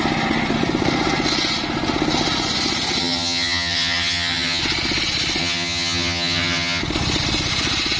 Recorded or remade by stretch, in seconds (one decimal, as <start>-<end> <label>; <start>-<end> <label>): 0.0-3.0 recorded; 3.0-4.6 remade; 4.6-5.4 recorded; 5.4-6.8 remade; 6.8-8.0 recorded